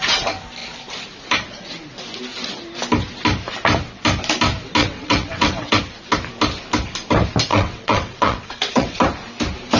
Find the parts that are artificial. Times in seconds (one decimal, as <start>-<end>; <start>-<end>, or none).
4.8-5.8; 7.5-9.0